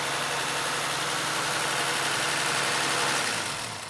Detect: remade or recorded recorded